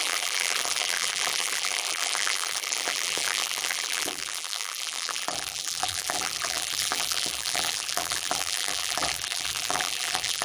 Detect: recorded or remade remade